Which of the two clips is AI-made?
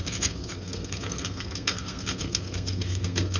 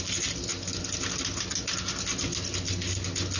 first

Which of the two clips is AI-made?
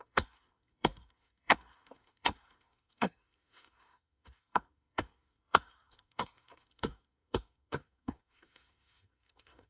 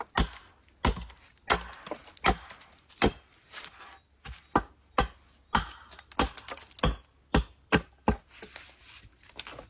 first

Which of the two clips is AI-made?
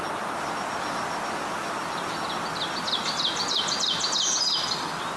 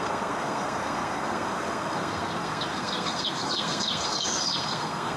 second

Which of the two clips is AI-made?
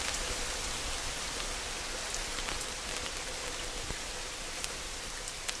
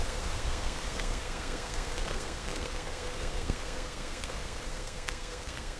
second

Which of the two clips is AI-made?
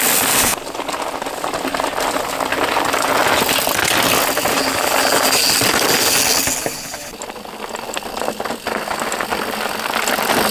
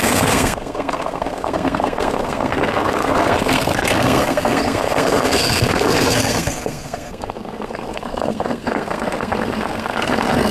second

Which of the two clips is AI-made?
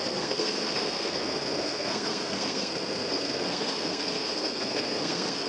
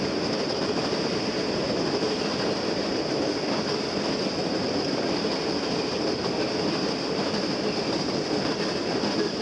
first